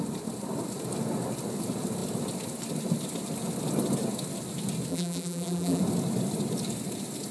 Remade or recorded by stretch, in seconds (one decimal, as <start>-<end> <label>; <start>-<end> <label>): 0.0-4.9 recorded; 4.9-5.8 remade; 5.8-7.3 recorded